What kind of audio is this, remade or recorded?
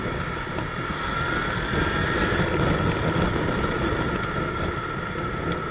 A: recorded